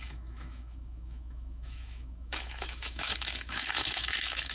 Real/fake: fake